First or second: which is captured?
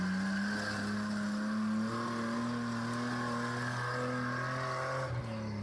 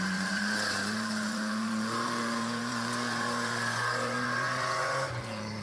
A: first